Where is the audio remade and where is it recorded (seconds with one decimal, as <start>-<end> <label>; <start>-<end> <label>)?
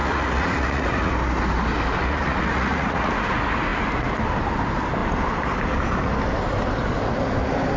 0.0-1.1 remade; 1.1-2.0 recorded; 2.0-3.1 remade; 3.1-7.8 recorded